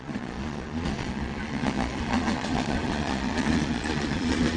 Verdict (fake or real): fake